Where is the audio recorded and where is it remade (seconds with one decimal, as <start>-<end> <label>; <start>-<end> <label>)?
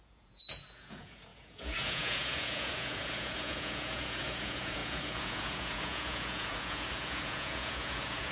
0.0-8.3 remade